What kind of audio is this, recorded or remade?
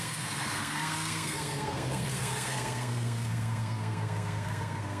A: remade